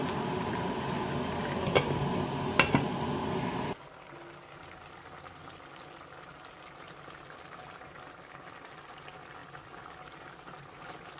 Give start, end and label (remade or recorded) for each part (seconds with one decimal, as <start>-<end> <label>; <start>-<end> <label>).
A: 0.0-11.2 recorded